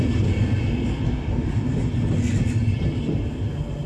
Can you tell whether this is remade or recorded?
recorded